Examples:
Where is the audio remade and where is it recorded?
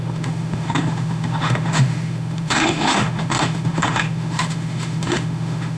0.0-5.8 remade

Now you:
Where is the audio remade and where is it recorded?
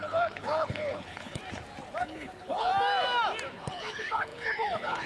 0.0-1.4 remade; 1.4-2.0 recorded; 2.0-2.7 remade; 2.7-3.5 recorded; 3.5-5.1 remade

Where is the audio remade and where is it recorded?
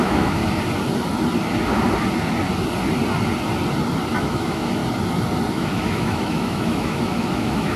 0.0-0.4 remade; 0.4-4.2 recorded; 4.2-4.8 remade; 4.8-5.5 recorded; 5.5-7.8 remade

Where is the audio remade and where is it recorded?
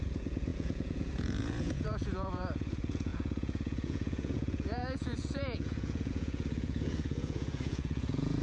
0.0-8.4 remade